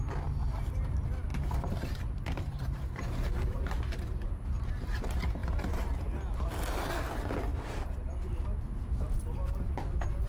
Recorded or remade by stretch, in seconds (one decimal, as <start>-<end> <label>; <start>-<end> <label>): 0.0-1.3 recorded; 1.3-4.3 remade; 4.3-7.5 recorded; 7.5-8.4 remade; 8.4-10.3 recorded